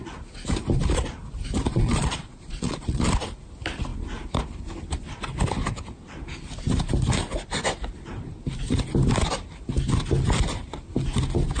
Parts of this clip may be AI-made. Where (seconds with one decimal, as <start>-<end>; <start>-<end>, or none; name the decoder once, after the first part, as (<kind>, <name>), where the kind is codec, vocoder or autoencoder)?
1.7-3.1 (vocoder, Vocos)